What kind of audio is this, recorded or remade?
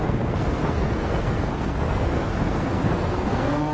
remade